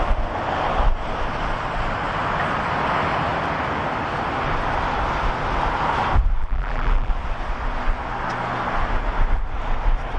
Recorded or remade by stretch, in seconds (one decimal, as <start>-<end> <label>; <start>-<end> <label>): 0.0-6.4 recorded; 6.4-7.1 remade; 7.1-10.2 recorded